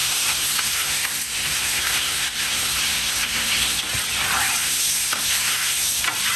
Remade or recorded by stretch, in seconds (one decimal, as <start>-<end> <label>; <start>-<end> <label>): 0.0-3.8 remade; 3.8-4.6 recorded; 4.6-6.0 remade; 6.0-6.4 recorded